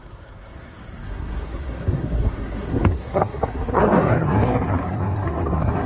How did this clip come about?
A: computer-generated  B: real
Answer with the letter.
A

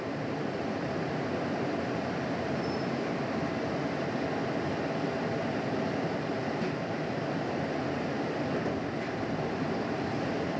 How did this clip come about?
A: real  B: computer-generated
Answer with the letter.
B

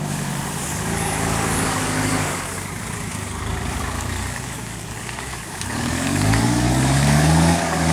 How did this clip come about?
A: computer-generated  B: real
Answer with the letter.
A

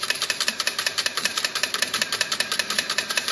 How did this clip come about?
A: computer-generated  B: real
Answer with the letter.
A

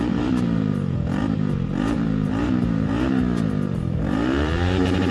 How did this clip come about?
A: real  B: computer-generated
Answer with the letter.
B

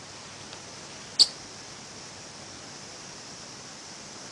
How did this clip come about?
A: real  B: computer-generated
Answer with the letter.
A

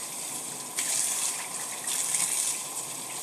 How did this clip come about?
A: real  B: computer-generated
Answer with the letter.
A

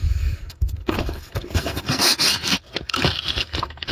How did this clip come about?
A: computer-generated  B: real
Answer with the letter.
A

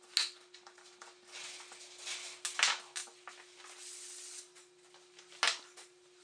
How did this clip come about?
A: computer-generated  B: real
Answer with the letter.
B